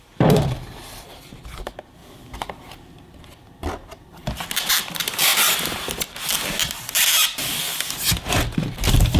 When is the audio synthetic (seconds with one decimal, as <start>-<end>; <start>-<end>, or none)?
0.0-5.3; 6.5-7.2; 8.2-9.2